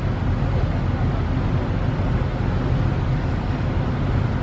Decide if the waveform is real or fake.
real